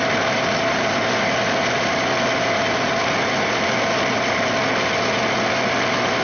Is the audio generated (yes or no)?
no